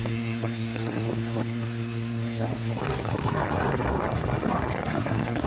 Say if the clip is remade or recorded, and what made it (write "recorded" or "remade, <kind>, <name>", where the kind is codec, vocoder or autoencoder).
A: remade, codec, SNAC